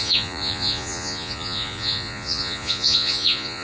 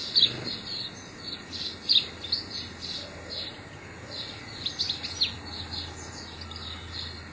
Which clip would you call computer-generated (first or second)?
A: first